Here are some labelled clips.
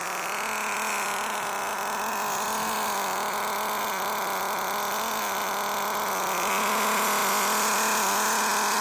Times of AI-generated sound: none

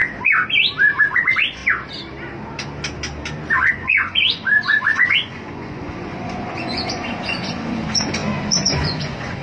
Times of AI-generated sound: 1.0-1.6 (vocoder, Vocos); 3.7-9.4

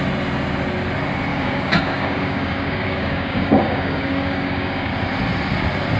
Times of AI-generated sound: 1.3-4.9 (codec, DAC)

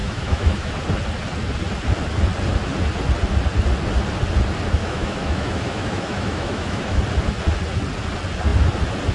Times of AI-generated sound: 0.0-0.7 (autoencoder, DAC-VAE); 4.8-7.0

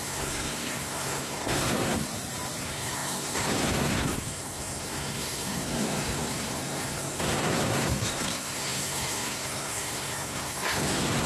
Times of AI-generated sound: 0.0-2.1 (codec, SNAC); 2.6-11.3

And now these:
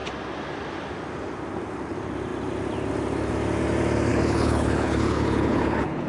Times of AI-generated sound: 4.1-6.1 (codec, HILCodec)

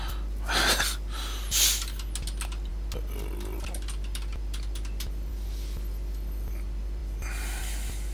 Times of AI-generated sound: none